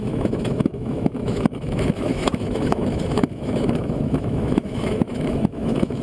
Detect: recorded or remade remade